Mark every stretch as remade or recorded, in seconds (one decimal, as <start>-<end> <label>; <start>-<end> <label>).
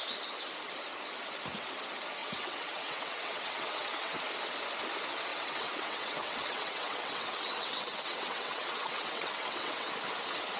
0.0-2.2 recorded; 2.2-4.2 remade; 4.2-5.3 recorded; 5.3-9.9 remade; 9.9-10.6 recorded